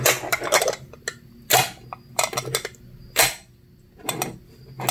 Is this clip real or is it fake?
real